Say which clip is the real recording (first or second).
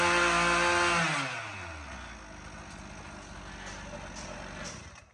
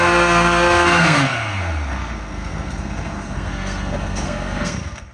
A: first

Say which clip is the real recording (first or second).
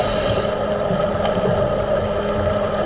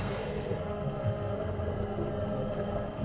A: first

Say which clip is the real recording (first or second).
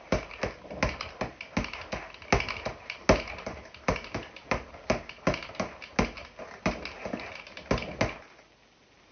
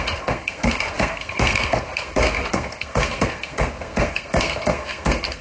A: first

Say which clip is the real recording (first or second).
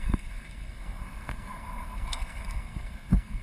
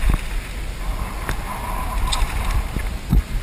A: second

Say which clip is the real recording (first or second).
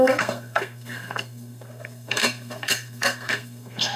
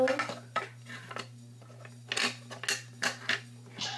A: second